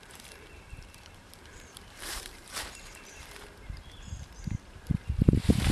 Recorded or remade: remade